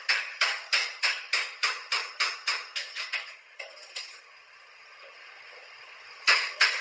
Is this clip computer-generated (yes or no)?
yes